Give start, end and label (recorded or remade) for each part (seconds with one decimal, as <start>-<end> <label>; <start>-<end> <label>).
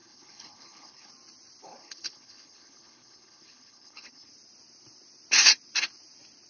0.0-1.1 remade; 1.1-1.6 recorded; 1.6-4.3 remade; 4.3-6.5 recorded